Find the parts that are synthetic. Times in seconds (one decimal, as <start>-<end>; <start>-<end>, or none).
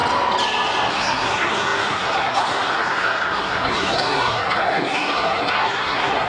0.9-6.3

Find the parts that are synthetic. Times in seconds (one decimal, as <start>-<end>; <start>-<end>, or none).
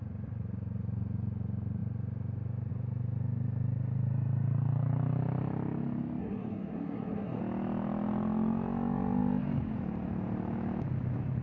6.2-7.4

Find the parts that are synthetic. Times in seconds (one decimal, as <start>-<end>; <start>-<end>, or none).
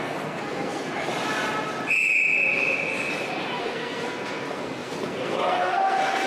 0.0-1.1; 3.6-6.3